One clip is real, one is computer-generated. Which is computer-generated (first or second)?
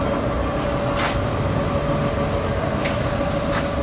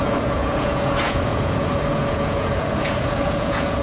second